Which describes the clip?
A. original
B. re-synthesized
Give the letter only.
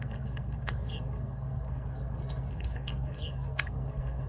B